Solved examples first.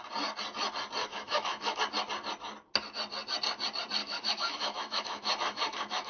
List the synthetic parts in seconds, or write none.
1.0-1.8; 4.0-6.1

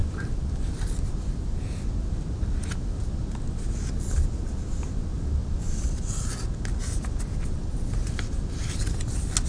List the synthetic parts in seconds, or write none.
none

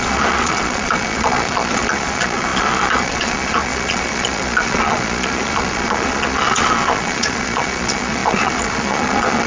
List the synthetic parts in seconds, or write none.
0.0-9.5

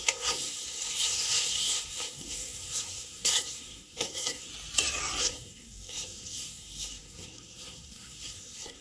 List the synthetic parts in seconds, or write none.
0.0-4.5; 5.2-8.8